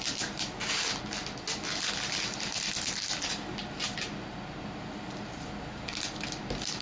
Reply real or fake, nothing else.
real